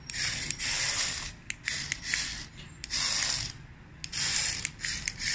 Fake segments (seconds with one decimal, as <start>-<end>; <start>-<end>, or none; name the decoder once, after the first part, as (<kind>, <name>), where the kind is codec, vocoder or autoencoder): none